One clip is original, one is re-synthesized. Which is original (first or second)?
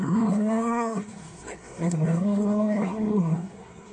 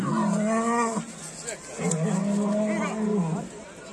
second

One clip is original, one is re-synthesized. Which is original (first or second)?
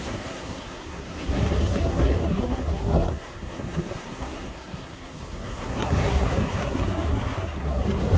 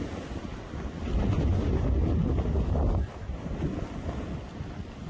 second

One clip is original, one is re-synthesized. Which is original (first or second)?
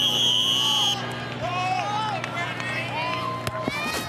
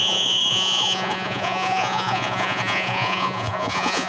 first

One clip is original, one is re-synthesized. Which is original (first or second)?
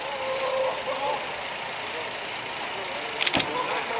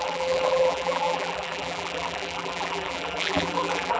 first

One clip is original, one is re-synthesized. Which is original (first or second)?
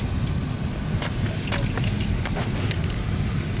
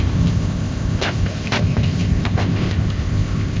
first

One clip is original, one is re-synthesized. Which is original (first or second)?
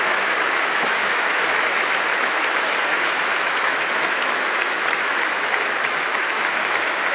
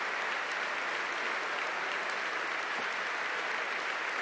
second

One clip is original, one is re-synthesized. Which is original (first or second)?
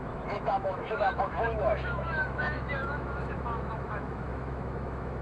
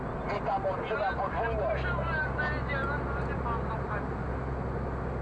second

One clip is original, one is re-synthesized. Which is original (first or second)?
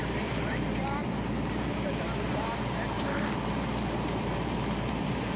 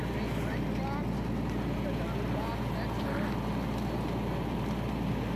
second